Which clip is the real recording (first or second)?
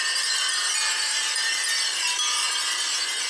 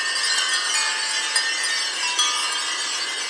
second